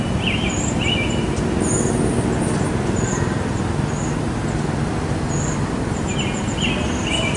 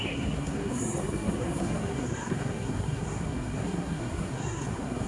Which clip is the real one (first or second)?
first